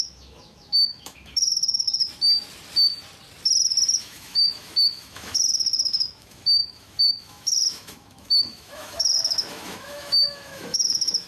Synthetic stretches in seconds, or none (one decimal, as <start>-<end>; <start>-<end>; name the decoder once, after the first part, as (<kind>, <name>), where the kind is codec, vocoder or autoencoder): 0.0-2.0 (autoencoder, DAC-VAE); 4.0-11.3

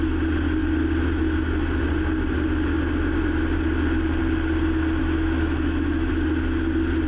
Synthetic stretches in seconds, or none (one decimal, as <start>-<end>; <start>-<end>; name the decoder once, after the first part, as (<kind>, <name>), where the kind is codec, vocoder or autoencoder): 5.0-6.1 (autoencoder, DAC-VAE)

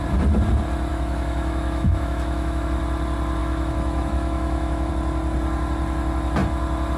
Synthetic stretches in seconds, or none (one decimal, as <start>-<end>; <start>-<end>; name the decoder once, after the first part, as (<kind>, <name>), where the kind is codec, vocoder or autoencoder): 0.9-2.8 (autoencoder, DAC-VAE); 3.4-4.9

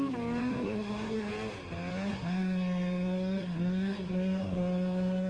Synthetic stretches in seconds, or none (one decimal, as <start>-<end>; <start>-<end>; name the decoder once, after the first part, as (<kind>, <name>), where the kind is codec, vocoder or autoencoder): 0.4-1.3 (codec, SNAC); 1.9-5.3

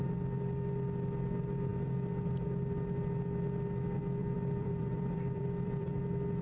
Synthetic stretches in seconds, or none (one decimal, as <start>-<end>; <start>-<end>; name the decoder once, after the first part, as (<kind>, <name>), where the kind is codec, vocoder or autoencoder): 4.2-6.0 (vocoder, BigVGAN v2)